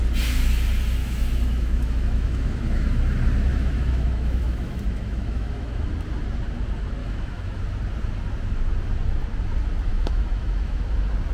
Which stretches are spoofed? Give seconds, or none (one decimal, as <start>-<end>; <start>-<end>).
1.0-3.0; 3.5-5.9; 7.0-7.6; 9.9-10.8

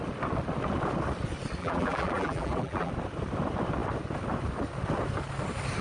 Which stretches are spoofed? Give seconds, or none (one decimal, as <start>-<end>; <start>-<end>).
1.6-2.9

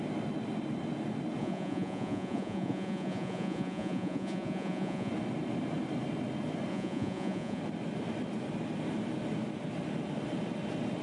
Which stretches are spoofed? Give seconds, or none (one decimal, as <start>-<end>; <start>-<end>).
1.4-5.1; 6.7-7.6

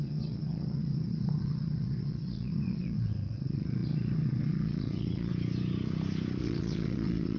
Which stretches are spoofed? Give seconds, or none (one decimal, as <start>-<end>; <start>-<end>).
0.0-5.3; 6.4-7.4

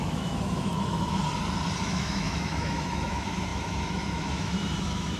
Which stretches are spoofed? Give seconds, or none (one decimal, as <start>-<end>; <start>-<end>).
0.0-1.2; 1.8-5.2

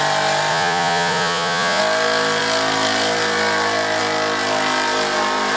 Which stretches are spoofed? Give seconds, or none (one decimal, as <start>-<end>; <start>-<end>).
0.5-1.8

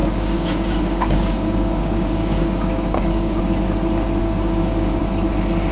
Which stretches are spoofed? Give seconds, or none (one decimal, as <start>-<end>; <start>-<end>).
0.0-3.4; 4.2-5.0